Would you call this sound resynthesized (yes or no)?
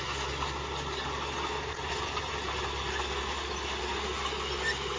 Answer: no